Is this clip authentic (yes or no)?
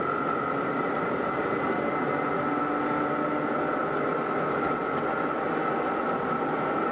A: yes